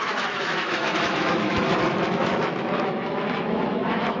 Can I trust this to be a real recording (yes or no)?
no